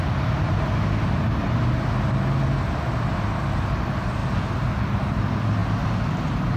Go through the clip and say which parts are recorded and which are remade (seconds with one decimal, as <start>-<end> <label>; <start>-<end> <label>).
0.0-5.6 recorded; 5.6-6.6 remade